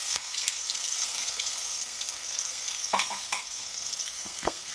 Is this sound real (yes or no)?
no